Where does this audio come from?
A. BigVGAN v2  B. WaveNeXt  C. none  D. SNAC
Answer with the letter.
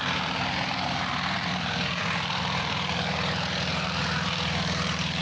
A